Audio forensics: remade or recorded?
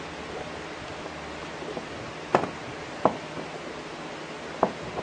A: recorded